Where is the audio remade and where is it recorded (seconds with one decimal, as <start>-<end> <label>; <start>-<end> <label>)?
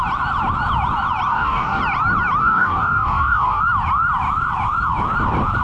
0.0-1.3 recorded; 1.3-1.8 remade; 1.8-2.4 recorded; 2.4-3.6 remade; 3.6-5.6 recorded